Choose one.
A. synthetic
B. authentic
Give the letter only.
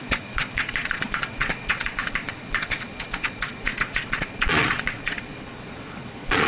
A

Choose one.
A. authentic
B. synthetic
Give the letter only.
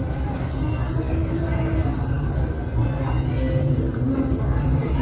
A